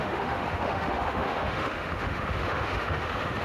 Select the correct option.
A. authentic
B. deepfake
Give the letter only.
B